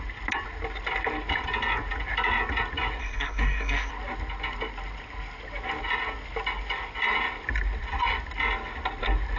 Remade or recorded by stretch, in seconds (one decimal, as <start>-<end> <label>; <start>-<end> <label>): 0.0-3.0 recorded; 3.0-3.9 remade; 3.9-9.4 recorded